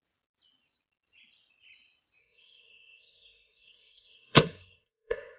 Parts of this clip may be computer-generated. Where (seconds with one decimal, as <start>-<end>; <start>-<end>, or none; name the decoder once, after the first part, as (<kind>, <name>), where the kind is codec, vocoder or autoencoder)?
2.2-5.4 (codec, SNAC)